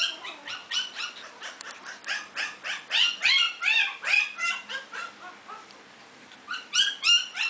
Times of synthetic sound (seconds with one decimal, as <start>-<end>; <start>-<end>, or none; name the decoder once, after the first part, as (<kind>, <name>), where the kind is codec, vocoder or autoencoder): 0.6-1.8 (vocoder, BigVGAN v2); 3.2-6.7